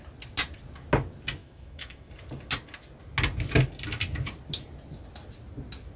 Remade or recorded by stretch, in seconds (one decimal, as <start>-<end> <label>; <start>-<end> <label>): 0.0-1.4 recorded; 1.4-2.1 remade; 2.1-6.0 recorded